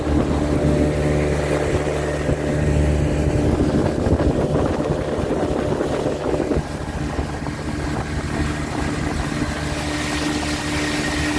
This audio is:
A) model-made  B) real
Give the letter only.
B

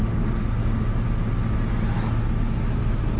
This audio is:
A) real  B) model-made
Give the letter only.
A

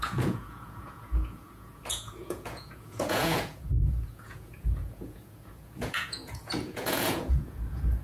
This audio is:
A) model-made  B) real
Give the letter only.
A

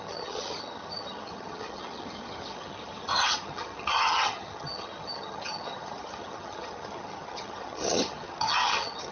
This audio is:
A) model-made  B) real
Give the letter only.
A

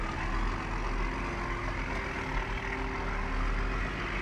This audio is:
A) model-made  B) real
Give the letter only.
B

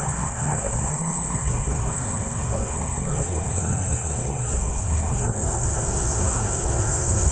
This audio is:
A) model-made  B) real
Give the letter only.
A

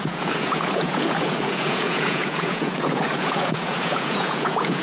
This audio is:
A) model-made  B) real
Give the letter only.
A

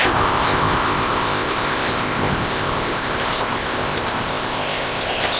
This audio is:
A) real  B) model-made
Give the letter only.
B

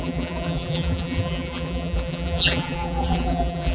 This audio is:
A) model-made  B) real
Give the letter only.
A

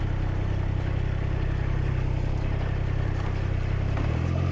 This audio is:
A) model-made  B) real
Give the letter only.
B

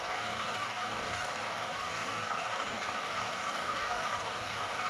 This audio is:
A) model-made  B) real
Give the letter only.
A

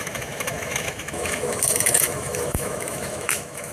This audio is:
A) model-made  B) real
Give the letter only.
A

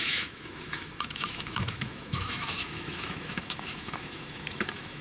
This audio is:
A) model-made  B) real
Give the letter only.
A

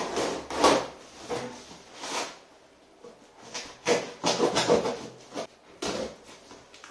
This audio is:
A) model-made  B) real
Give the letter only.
B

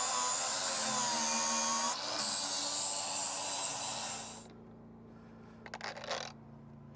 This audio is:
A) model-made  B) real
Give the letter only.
B